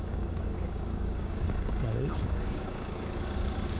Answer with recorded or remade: remade